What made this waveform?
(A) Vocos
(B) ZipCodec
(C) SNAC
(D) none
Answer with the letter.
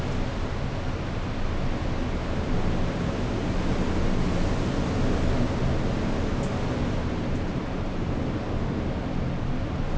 D